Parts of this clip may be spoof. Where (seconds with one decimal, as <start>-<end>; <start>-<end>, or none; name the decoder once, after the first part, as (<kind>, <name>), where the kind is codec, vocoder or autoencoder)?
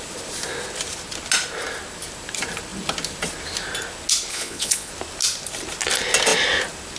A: 4.3-4.9 (vocoder, Vocos)